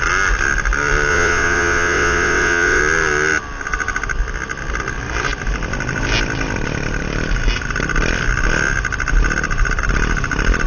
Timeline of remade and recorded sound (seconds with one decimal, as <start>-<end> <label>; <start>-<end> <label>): 0.0-1.1 recorded; 1.1-2.8 remade; 2.8-10.7 recorded